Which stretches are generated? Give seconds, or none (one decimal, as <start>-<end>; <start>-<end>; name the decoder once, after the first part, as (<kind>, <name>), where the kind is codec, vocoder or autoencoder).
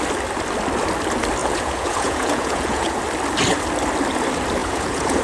1.4-3.0 (vocoder, Vocos); 4.6-5.2